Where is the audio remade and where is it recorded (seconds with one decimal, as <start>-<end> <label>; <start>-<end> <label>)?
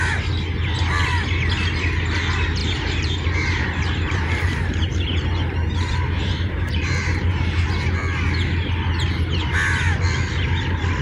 0.0-2.6 recorded; 2.6-7.6 remade; 7.6-11.0 recorded